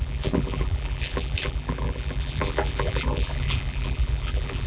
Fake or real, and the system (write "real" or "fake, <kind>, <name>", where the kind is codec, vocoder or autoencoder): fake, vocoder, BigVGAN v2